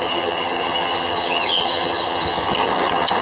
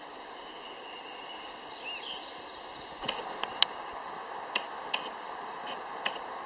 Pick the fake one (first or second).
first